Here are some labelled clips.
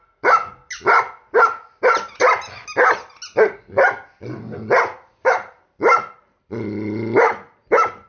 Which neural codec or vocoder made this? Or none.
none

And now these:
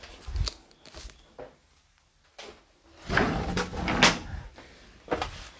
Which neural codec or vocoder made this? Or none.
none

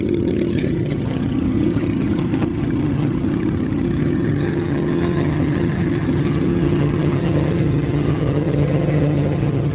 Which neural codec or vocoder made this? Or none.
vocoder, HiFi-GAN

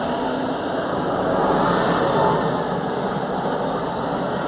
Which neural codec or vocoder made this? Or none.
none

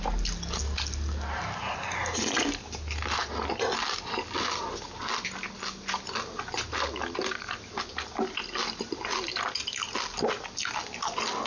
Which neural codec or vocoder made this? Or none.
none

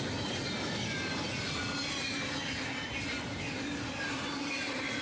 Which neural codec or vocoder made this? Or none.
none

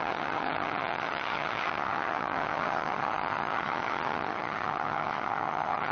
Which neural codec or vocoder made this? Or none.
vocoder, HiFi-GAN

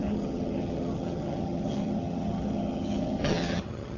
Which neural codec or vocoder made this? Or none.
vocoder, HiFi-GAN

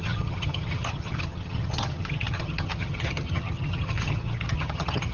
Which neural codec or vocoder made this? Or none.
vocoder, HiFi-GAN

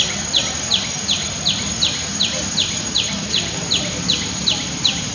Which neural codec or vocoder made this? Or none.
none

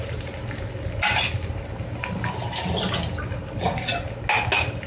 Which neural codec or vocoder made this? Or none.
none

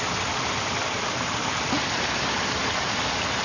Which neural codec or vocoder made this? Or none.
none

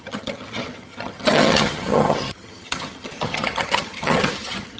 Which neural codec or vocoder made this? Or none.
vocoder, HiFi-GAN